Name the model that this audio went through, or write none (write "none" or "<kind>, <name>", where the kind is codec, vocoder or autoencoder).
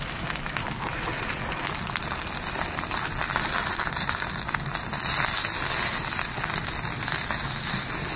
none